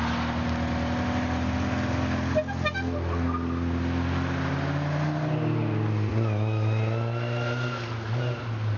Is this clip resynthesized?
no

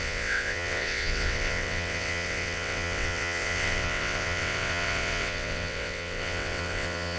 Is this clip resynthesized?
yes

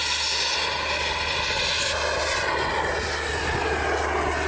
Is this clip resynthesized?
no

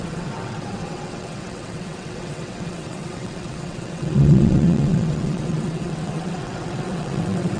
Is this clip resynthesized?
yes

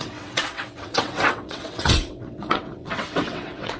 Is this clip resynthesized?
yes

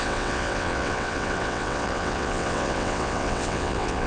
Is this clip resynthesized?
yes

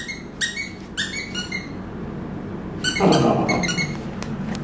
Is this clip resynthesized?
no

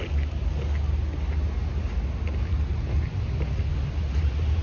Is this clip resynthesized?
no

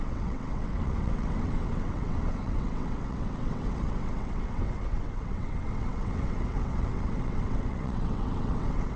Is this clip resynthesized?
yes